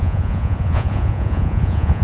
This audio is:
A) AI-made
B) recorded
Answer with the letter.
A